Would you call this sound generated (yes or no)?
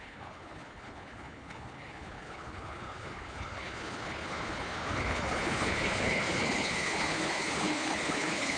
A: yes